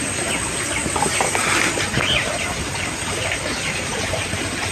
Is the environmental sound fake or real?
real